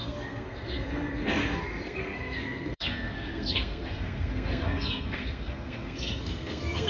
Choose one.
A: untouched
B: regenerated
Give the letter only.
B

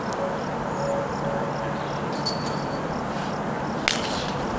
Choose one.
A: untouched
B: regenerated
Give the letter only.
A